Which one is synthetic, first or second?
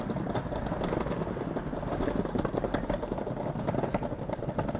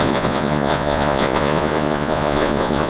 second